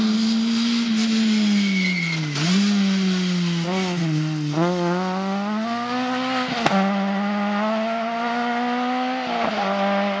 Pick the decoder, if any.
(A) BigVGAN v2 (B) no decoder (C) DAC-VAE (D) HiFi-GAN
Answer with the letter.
B